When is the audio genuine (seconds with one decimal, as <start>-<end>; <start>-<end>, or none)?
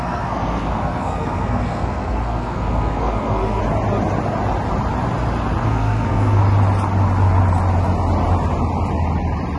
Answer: 3.6-5.6; 6.4-9.6